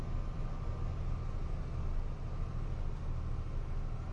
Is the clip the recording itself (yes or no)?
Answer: yes